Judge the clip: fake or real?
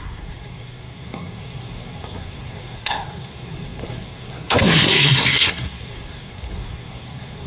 fake